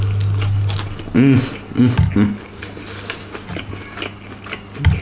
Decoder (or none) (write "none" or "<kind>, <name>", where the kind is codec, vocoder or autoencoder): none